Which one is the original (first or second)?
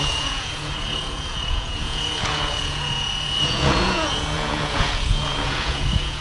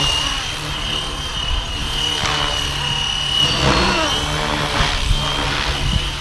second